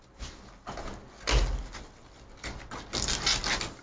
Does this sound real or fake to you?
real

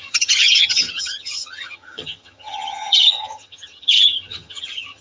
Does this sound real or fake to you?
fake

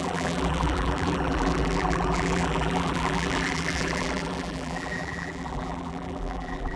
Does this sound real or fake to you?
fake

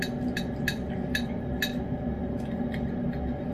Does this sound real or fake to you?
real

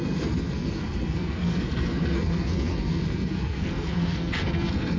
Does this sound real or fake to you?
fake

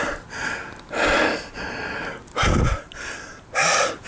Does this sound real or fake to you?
real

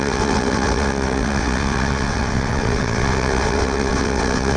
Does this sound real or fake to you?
fake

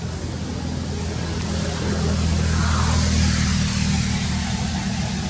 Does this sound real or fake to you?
real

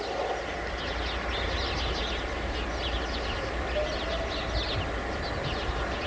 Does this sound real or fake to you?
real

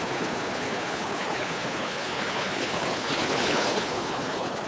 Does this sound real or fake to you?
fake